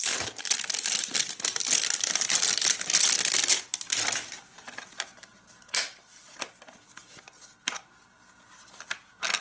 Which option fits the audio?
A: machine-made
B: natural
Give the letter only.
B